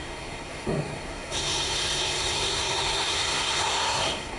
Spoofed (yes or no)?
yes